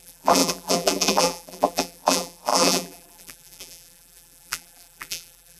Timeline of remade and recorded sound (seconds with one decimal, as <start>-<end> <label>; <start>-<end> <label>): 0.0-5.6 remade

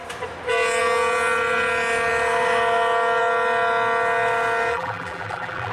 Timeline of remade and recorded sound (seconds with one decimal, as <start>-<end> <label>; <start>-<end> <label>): 0.0-4.7 recorded; 4.7-5.7 remade

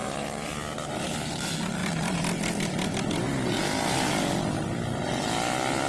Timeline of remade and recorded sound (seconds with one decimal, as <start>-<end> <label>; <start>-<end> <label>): 0.0-5.9 recorded

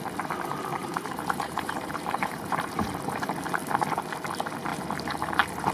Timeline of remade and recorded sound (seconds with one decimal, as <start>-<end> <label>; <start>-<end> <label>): 0.0-0.7 recorded; 0.7-2.7 remade; 2.7-5.7 recorded

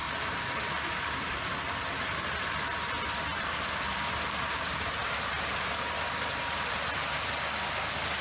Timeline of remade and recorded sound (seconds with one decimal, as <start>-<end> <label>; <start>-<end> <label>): 0.0-1.4 remade; 1.4-3.9 recorded; 3.9-7.3 remade; 7.3-8.2 recorded

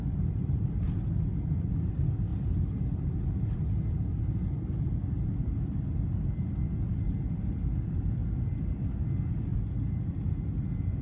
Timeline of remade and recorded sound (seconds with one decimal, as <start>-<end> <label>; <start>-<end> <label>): 0.0-9.5 recorded; 9.5-10.1 remade; 10.1-11.0 recorded